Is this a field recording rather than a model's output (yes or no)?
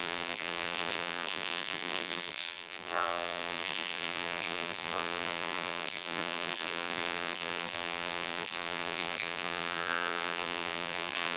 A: no